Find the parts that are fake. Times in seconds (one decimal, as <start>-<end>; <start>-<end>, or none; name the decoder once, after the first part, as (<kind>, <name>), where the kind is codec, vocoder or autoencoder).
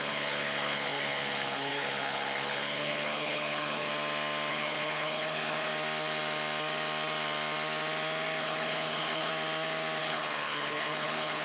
0.0-3.9 (codec, HILCodec); 4.5-5.7; 8.4-9.3; 10.0-11.4